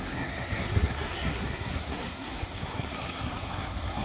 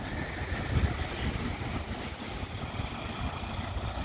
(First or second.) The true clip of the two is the second